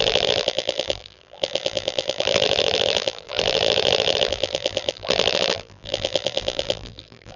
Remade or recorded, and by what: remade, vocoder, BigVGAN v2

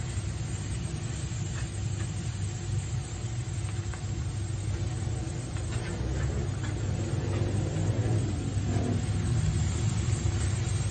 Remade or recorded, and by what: recorded